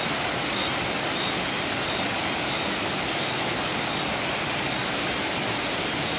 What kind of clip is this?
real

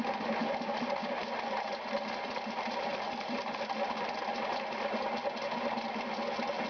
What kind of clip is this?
real